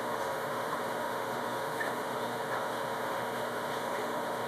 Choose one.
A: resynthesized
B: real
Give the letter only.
A